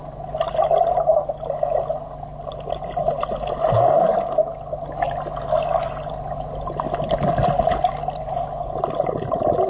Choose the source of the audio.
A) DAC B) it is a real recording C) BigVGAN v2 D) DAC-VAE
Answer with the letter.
B